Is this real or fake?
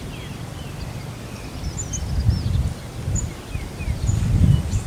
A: real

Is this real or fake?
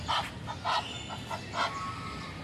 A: real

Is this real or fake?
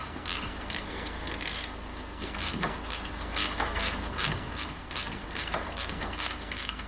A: fake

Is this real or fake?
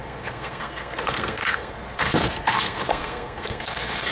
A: fake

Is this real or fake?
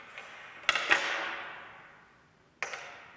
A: real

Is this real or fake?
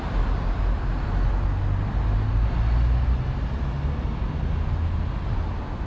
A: real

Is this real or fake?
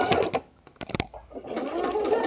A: real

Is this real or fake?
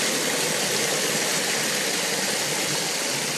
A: real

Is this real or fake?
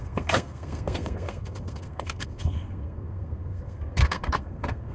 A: fake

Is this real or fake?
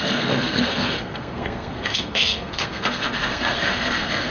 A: fake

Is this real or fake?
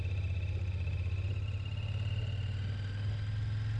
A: real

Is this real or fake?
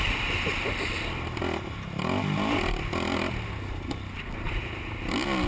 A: real